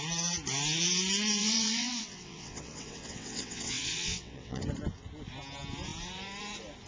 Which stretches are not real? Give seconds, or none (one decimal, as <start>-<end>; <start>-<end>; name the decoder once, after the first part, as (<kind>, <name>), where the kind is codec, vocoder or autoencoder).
1.4-4.6 (vocoder, WaveNeXt)